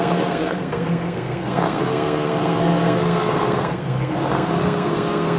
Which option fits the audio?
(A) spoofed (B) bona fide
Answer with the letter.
A